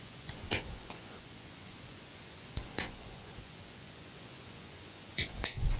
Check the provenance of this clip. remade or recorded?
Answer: remade